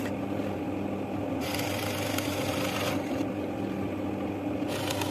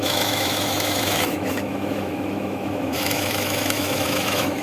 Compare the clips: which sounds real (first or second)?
first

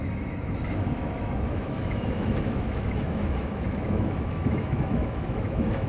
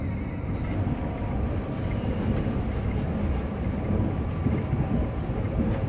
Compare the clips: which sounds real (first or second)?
second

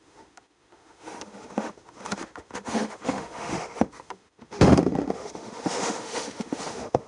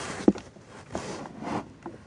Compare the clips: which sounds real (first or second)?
second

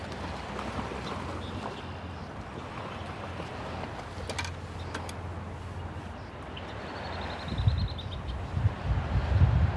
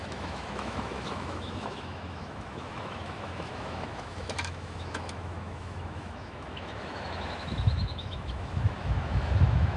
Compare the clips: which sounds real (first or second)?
first